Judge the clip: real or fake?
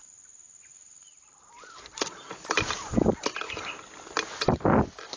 real